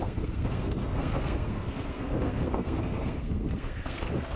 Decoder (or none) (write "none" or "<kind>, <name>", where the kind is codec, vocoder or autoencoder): codec, SNAC